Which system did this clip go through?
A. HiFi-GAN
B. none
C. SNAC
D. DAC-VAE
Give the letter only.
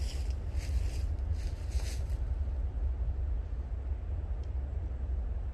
B